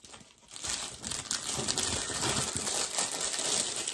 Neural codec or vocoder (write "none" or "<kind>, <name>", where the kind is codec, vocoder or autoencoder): none